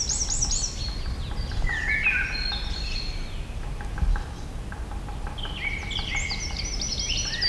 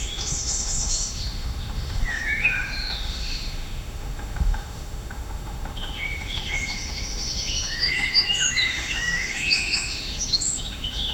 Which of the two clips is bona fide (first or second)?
first